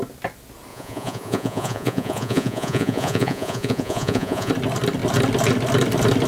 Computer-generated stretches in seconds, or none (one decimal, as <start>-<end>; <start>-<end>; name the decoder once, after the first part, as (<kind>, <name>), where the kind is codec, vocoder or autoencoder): 0.7-4.5 (vocoder, Vocos)